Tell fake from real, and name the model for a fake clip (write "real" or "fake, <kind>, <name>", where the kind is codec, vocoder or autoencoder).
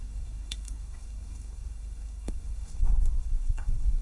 fake, codec, SNAC